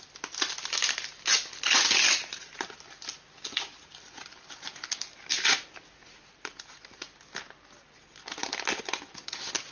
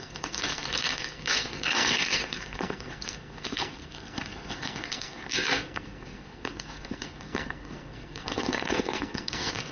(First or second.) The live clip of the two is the first